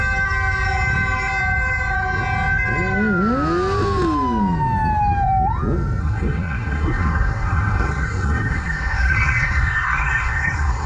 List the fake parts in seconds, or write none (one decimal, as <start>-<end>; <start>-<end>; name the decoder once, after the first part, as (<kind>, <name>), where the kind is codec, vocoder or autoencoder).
6.0-10.9 (codec, SNAC)